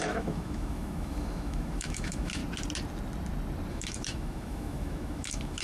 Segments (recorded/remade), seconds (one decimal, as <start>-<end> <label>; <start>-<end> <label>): 0.0-2.4 remade; 2.4-3.7 recorded; 3.7-5.6 remade